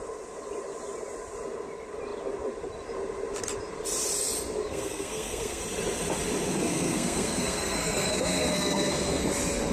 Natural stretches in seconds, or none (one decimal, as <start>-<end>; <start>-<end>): 0.0-4.6; 5.6-6.5; 9.2-9.7